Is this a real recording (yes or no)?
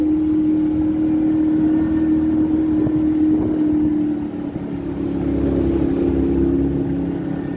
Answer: yes